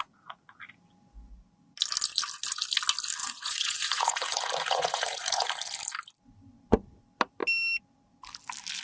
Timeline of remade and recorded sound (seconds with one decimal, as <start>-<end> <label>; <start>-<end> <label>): 0.0-0.6 remade; 0.6-3.2 recorded; 3.2-5.5 remade; 5.5-8.8 recorded